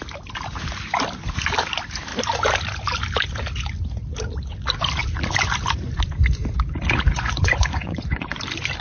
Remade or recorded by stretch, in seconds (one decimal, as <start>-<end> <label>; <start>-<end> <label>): 0.0-7.1 recorded; 7.1-8.4 remade; 8.4-8.8 recorded